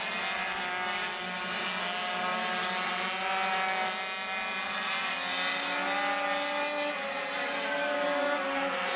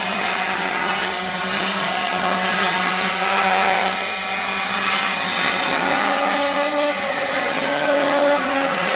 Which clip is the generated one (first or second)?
second